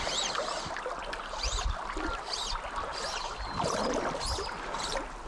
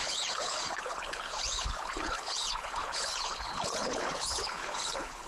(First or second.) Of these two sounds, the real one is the first